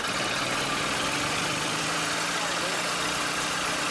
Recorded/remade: recorded